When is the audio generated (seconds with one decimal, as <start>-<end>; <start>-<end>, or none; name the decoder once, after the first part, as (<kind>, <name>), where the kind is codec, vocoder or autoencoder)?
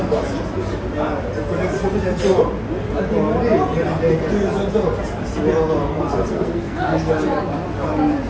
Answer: 5.9-7.2 (codec, SNAC)